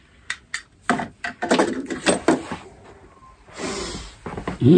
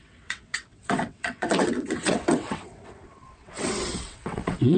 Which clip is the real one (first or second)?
first